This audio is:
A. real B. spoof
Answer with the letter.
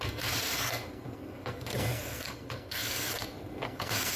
B